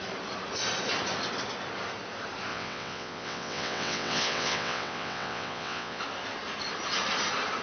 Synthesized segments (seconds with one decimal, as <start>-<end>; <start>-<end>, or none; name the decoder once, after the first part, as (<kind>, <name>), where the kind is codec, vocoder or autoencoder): 2.5-6.0 (vocoder, WaveNeXt)